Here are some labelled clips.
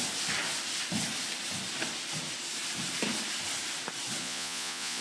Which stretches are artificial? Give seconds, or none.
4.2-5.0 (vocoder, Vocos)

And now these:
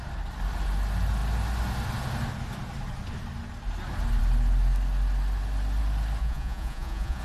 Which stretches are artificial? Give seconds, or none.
6.2-7.2 (vocoder, Vocos)

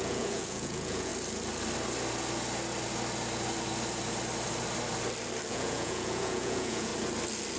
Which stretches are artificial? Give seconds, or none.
0.0-1.1 (vocoder, Vocos); 5.5-6.9

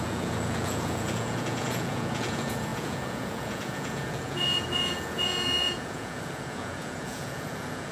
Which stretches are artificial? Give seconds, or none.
0.0-7.9 (vocoder, Vocos)

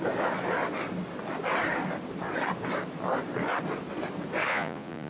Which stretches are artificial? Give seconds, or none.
4.5-5.1 (vocoder, Vocos)

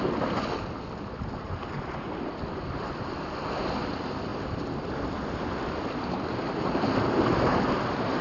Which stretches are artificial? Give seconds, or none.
none

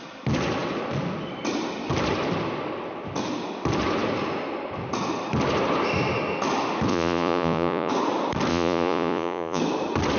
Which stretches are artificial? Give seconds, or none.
6.9-7.9 (vocoder, Vocos); 8.5-9.6

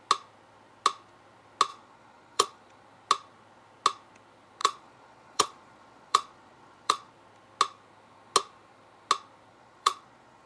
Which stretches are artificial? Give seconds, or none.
1.7-2.6 (vocoder, Vocos); 4.6-7.1; 9.5-10.5